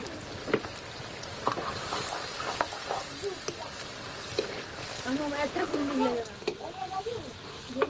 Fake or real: real